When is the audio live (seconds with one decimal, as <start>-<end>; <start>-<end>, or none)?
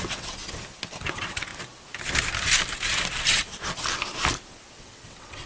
0.4-1.1; 1.5-4.8